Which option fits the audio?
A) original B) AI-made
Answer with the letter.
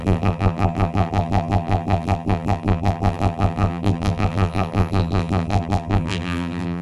B